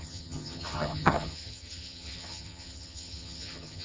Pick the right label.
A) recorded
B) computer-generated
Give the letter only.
B